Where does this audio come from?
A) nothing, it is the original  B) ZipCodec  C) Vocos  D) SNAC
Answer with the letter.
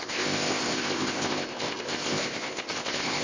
B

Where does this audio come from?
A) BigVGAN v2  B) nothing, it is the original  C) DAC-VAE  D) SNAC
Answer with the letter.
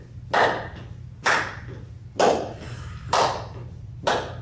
B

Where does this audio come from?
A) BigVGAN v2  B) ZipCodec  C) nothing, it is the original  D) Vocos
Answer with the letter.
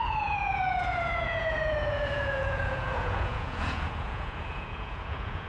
D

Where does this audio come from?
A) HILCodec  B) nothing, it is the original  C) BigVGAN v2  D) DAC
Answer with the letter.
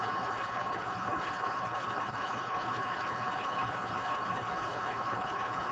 A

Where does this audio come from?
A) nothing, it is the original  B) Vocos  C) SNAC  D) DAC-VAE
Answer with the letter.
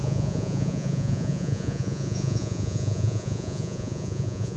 B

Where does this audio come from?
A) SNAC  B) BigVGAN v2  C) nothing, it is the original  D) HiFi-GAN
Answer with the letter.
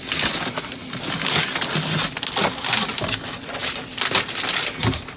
C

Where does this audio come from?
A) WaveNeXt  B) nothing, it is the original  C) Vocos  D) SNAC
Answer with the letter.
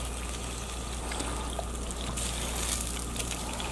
B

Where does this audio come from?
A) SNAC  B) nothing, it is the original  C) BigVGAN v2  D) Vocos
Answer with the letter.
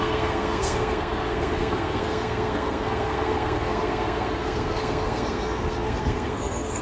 A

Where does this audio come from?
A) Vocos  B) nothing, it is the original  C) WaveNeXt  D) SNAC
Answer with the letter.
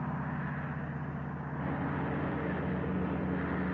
B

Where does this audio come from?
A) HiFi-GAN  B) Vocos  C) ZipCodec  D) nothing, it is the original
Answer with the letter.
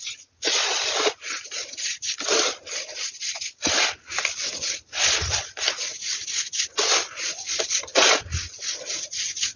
D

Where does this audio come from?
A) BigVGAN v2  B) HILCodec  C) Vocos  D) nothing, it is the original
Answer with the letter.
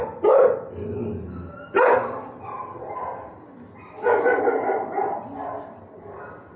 D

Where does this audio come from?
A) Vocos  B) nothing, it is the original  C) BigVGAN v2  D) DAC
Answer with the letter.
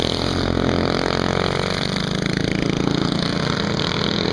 B